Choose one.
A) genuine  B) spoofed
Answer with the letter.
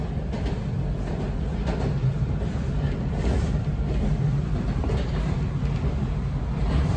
A